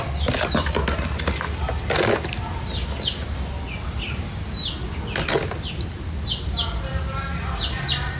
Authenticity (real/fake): real